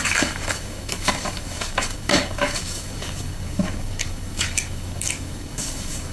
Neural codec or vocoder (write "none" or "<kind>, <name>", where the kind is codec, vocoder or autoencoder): codec, DAC